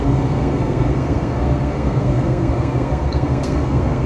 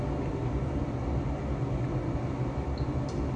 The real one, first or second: second